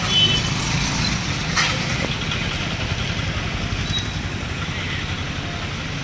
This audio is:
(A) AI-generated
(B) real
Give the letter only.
B